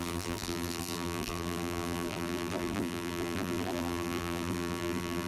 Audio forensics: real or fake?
fake